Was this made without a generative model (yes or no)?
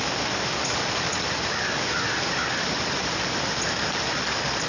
yes